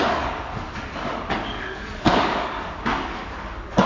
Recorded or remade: remade